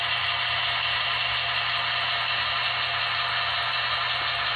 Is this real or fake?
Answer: real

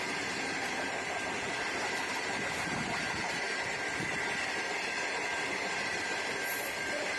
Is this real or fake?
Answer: fake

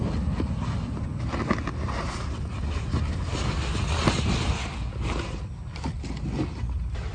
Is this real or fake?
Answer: real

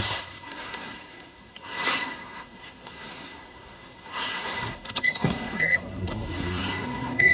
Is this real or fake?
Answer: fake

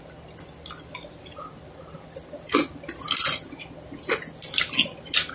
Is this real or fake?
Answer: real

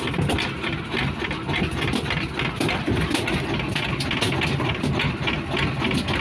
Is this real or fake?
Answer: real